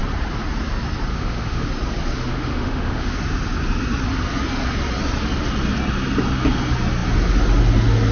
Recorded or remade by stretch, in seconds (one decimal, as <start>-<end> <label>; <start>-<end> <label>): 0.0-1.1 recorded; 1.1-1.7 remade; 1.7-2.3 recorded; 2.3-3.1 remade; 3.1-8.1 recorded